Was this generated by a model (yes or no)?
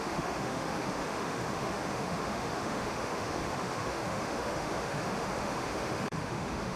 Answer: yes